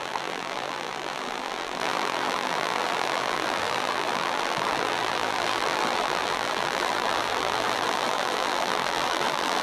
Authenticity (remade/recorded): remade